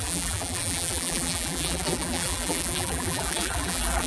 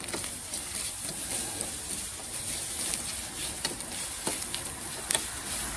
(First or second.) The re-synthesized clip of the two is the first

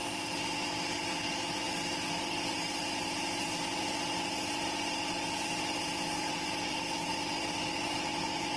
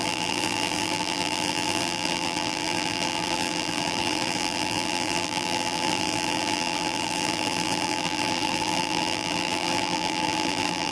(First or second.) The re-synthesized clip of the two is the second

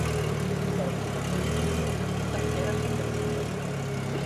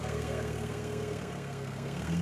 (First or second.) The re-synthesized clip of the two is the second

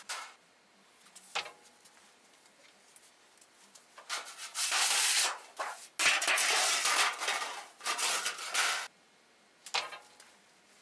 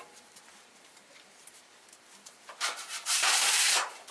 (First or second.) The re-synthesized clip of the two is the second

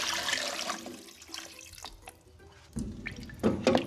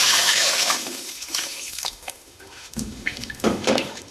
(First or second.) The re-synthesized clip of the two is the second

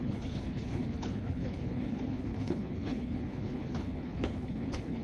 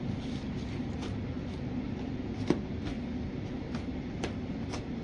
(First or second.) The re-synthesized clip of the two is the first